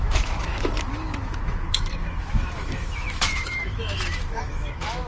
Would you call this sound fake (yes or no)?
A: yes